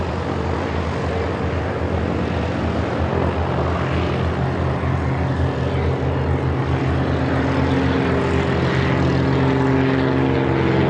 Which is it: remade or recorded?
recorded